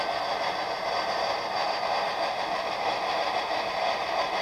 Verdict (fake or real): fake